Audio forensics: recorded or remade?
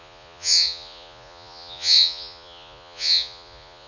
remade